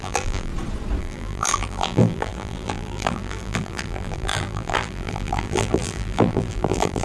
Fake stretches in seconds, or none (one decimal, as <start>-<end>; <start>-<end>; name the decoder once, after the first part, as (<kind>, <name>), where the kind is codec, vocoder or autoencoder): 0.0-0.5 (vocoder, BigVGAN v2); 1.0-7.0